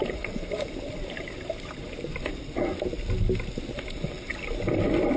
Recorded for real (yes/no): yes